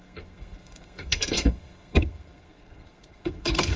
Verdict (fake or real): fake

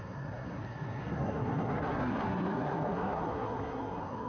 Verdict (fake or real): fake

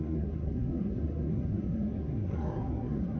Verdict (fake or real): fake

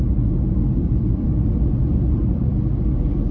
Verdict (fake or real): real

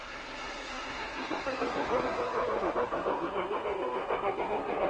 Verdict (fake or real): fake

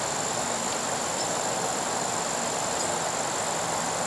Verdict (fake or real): real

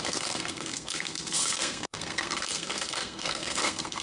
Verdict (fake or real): fake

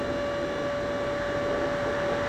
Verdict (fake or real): real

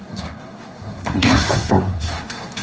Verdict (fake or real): fake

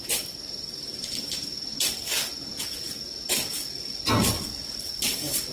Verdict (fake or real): real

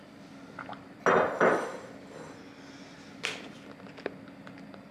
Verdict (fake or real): real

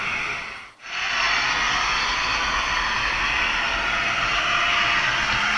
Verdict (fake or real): real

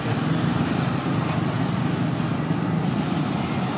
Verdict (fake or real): real